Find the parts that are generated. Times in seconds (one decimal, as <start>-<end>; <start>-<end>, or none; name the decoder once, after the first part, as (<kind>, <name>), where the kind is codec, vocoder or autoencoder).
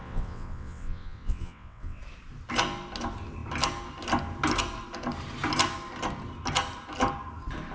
0.0-2.0 (vocoder, WaveNeXt)